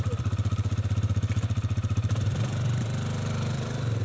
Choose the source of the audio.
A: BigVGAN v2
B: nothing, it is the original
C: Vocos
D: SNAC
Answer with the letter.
A